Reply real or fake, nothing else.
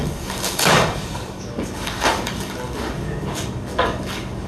fake